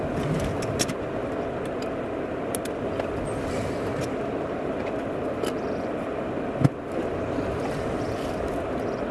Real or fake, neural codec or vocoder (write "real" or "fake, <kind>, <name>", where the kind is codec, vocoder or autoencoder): real